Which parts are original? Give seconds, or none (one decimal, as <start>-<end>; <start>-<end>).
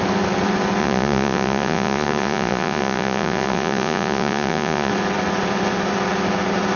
0.0-0.8; 4.9-6.8